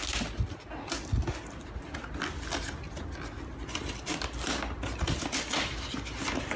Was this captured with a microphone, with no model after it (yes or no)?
yes